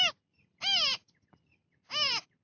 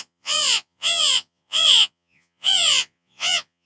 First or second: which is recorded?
first